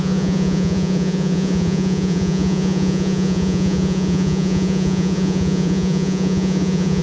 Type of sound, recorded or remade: remade